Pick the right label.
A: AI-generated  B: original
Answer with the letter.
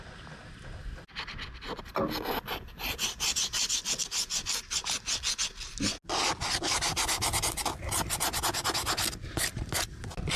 B